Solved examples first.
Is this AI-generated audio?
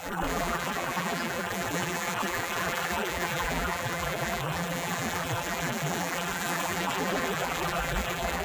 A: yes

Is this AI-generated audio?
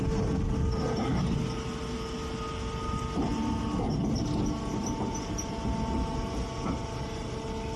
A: no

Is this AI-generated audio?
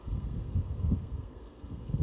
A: yes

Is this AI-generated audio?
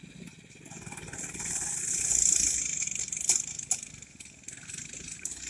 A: no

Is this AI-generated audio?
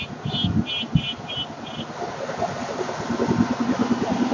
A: no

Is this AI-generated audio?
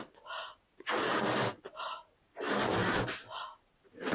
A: no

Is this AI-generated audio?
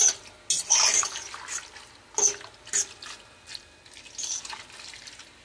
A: no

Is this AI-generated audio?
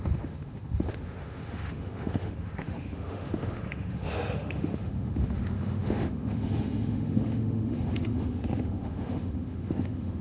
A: yes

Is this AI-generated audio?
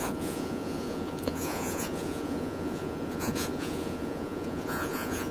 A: yes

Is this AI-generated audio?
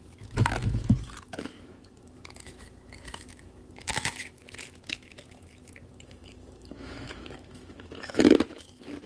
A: yes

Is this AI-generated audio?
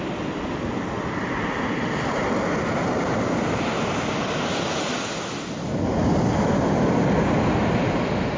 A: no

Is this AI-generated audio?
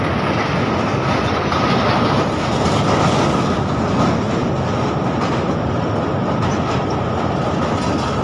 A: no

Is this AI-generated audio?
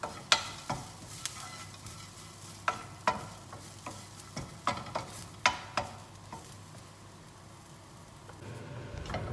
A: no